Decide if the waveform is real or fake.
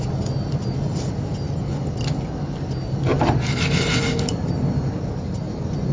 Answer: real